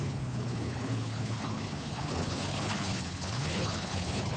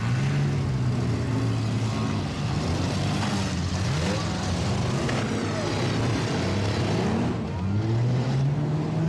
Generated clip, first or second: first